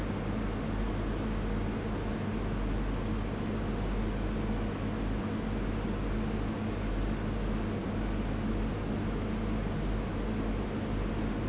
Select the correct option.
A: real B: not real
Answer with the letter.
A